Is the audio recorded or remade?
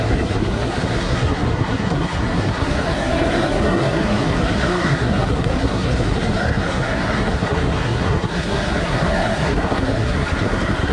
remade